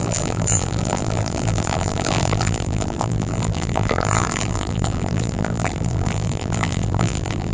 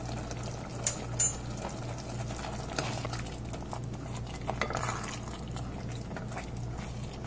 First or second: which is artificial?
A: first